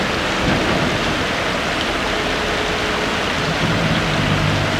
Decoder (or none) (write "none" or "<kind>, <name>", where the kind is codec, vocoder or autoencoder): none